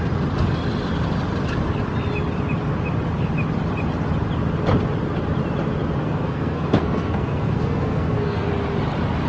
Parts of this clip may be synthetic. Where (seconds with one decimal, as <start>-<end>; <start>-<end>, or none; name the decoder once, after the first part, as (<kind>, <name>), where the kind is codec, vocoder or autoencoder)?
6.0-8.5 (codec, SNAC)